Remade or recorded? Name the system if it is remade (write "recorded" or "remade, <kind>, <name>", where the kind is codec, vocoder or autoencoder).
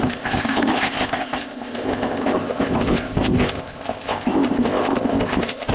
remade, codec, ZipCodec